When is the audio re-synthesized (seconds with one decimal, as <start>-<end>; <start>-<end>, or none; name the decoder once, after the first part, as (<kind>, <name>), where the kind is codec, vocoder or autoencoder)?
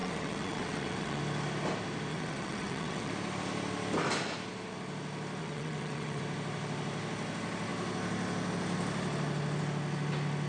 0.0-1.2 (vocoder, WaveNeXt); 2.1-3.1; 5.4-6.2